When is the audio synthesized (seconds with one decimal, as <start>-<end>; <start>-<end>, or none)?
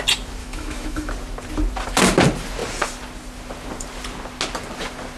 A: 0.4-1.1